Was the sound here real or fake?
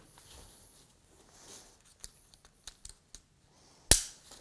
real